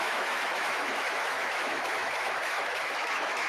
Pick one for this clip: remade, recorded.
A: remade